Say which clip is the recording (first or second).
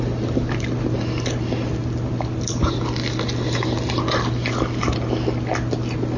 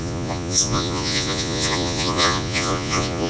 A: first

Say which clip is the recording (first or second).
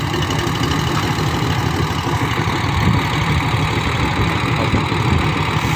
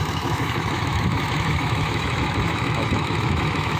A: first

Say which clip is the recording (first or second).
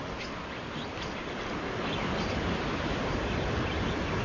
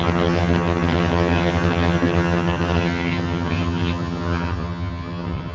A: first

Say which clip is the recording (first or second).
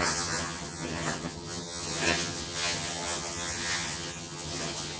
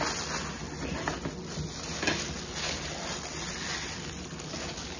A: second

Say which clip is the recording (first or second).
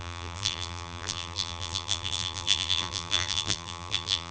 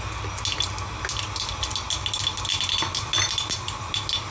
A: second